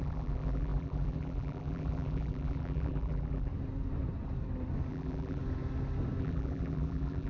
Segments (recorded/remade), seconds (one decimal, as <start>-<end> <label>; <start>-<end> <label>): 0.0-3.5 remade; 3.5-4.9 recorded; 4.9-5.4 remade; 5.4-6.2 recorded; 6.2-7.3 remade